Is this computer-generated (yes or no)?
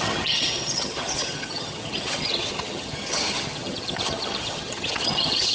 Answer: yes